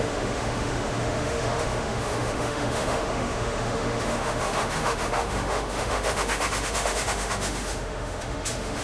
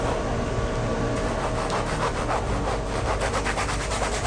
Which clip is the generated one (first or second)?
first